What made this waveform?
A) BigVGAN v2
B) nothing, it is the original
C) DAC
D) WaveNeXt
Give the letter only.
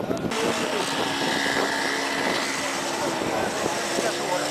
B